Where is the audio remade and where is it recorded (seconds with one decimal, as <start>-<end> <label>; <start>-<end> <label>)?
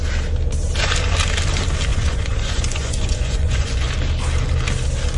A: 0.0-1.9 recorded; 1.9-3.9 remade; 3.9-5.2 recorded